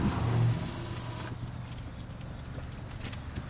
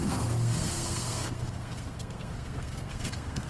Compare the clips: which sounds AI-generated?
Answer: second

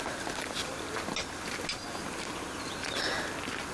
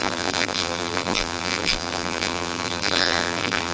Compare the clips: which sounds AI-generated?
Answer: second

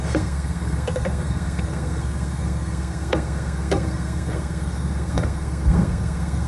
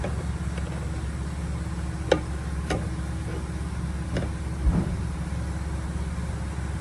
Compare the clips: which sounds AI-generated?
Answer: first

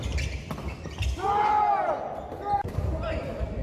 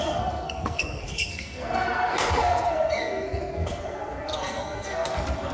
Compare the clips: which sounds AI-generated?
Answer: second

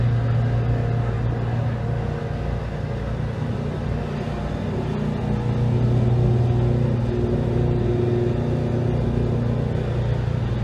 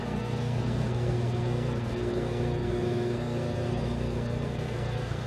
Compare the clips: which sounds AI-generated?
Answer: second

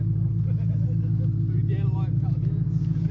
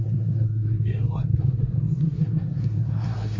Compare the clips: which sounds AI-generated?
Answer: second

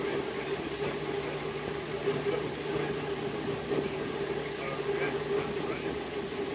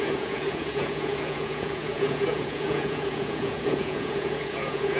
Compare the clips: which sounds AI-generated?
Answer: second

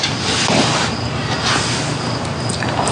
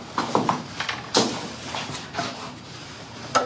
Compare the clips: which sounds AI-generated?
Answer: second